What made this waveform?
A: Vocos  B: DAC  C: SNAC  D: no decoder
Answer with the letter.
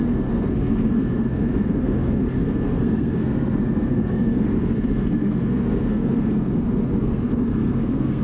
C